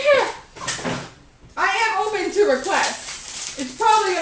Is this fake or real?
real